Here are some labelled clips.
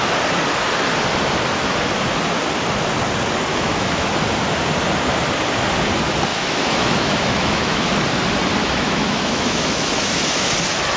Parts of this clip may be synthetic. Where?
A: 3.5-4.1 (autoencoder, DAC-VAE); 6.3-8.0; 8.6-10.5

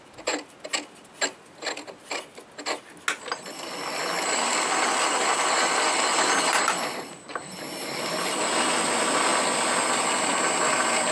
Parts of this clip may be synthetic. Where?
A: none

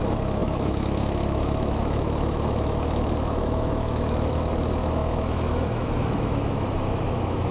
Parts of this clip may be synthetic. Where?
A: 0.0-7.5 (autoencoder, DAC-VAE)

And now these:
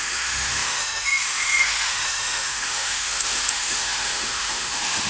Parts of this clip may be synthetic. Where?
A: 0.0-5.1 (autoencoder, DAC-VAE)